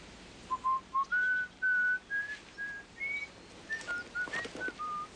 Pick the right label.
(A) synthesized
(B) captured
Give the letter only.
B